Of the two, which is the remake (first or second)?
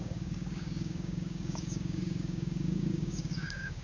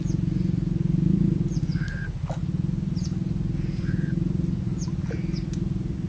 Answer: first